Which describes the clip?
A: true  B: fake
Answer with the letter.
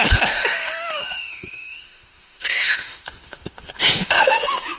B